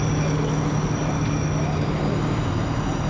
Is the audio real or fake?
real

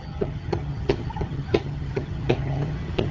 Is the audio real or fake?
fake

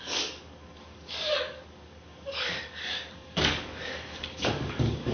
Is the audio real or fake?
fake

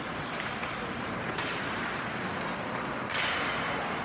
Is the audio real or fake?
fake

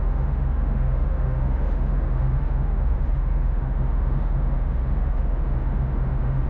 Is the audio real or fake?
fake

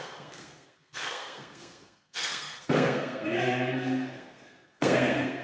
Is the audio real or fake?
fake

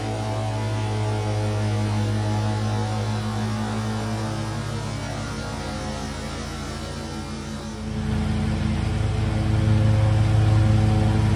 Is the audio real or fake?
real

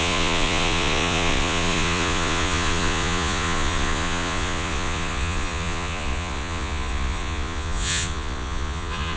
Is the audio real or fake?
fake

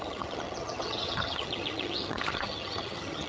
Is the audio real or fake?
fake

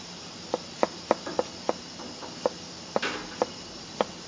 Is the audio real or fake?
real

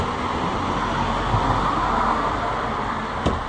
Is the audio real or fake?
real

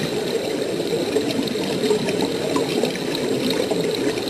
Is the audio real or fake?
real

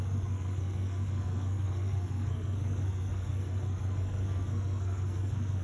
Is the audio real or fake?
fake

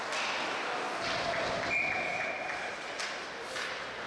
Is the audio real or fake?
real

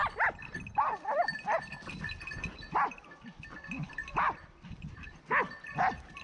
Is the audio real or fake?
real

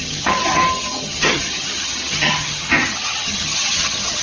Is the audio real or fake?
fake